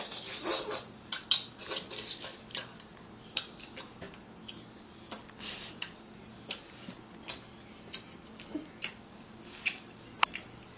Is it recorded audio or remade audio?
remade